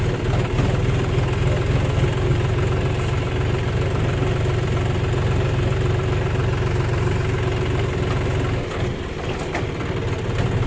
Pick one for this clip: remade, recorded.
recorded